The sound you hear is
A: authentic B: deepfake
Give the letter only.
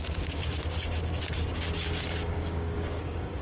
B